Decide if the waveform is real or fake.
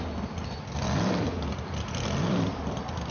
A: fake